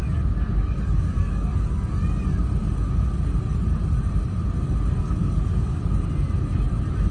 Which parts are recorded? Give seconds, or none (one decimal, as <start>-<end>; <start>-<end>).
0.0-0.5; 1.9-5.2; 5.8-7.1

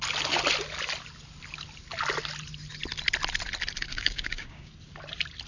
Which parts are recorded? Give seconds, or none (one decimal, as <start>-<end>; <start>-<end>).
0.0-3.9; 4.7-5.5

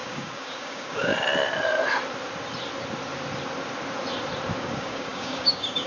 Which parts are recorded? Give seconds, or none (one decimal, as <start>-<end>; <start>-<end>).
1.1-4.6

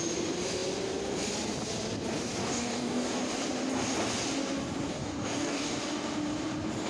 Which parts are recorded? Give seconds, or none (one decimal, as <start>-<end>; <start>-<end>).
0.0-2.4; 3.2-4.9; 5.8-6.9